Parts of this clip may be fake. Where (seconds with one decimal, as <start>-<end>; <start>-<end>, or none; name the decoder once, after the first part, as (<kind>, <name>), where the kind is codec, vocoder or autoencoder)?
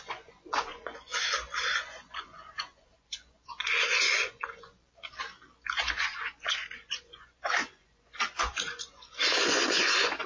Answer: 0.0-1.1 (vocoder, Vocos); 1.7-4.8; 5.9-10.3